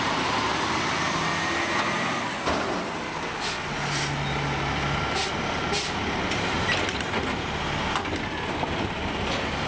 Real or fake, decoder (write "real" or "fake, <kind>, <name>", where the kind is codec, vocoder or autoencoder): real